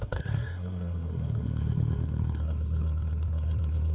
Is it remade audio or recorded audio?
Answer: remade